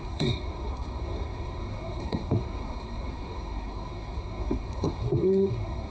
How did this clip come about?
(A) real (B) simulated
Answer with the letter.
B